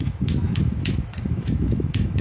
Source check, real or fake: fake